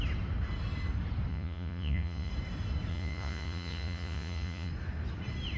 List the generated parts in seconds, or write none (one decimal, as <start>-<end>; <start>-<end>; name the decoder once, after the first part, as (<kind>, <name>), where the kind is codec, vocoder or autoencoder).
1.3-2.3 (vocoder, Vocos); 2.9-4.7

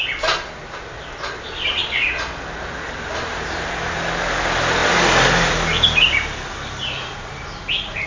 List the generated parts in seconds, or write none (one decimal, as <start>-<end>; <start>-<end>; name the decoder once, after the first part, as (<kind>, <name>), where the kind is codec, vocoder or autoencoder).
none